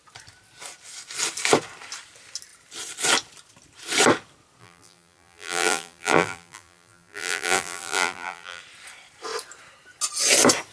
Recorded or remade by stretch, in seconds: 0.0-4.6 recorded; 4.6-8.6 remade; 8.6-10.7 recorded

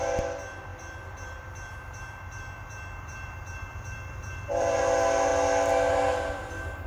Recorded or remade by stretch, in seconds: 0.0-0.7 recorded; 0.7-4.8 remade; 4.8-6.9 recorded